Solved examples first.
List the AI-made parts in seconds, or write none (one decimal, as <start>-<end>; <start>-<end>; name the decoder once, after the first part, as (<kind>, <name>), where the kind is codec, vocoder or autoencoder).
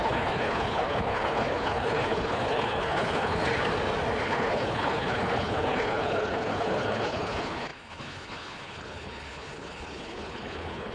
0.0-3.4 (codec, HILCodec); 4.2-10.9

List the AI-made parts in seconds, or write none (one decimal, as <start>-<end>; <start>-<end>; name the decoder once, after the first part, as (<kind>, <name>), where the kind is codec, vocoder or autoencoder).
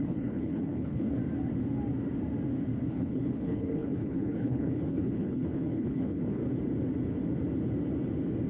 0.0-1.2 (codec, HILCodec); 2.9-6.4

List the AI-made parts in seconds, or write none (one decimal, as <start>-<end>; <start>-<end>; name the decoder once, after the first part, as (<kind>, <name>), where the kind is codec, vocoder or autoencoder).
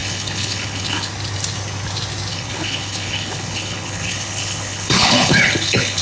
0.0-1.1 (codec, HILCodec); 2.3-6.0